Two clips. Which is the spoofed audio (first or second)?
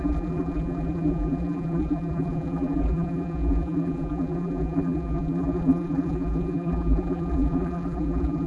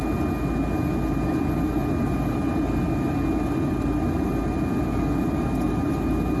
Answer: first